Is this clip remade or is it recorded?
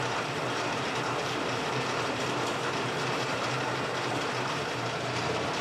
remade